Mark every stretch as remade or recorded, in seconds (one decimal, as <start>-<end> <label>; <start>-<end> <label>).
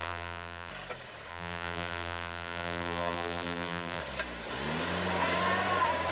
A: 0.0-0.7 remade; 0.7-1.3 recorded; 1.3-4.0 remade; 4.0-6.1 recorded